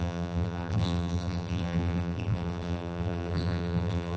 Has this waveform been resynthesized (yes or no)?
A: yes